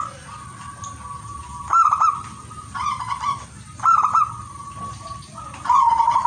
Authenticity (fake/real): real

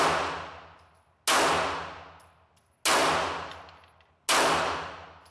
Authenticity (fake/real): real